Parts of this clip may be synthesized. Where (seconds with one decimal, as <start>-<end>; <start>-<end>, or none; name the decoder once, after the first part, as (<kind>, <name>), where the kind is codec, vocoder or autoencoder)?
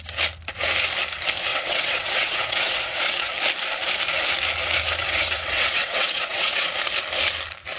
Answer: 1.5-3.3 (vocoder, WaveNeXt); 5.0-6.7